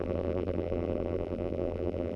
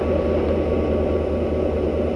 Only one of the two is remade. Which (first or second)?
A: first